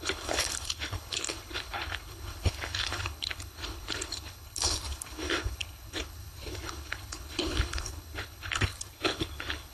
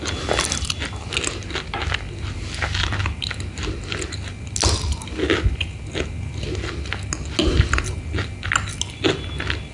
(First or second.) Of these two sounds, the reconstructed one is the first